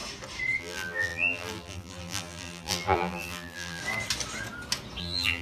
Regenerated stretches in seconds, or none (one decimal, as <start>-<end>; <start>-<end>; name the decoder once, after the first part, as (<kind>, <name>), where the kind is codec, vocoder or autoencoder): 0.6-3.8 (vocoder, BigVGAN v2); 5.0-5.4